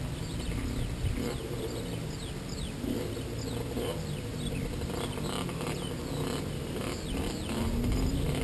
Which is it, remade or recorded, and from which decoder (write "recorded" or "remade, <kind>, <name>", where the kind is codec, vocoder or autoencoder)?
recorded